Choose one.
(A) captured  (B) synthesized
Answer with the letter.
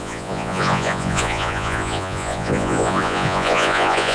B